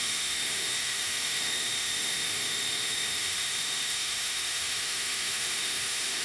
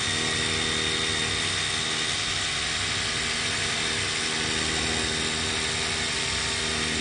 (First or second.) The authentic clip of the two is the second